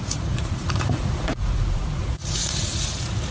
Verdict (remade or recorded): remade